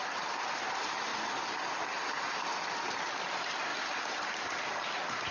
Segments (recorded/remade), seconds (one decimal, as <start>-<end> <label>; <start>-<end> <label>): 0.0-5.3 recorded